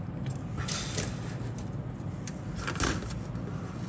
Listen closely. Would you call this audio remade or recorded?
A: recorded